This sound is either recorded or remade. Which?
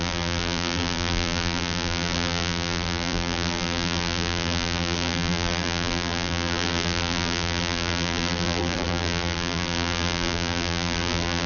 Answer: remade